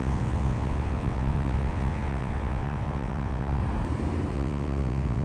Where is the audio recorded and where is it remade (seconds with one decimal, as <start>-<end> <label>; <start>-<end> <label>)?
0.0-3.6 remade; 3.6-4.3 recorded; 4.3-5.2 remade